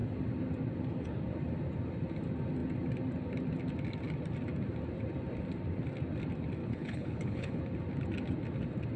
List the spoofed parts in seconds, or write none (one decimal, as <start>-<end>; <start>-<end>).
6.6-7.6